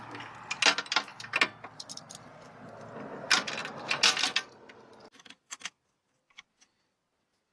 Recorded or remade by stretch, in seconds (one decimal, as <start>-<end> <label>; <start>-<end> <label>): 0.0-7.5 recorded